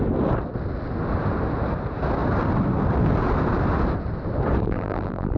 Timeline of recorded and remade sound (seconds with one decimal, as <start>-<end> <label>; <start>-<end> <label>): 0.0-4.6 recorded; 4.6-5.4 remade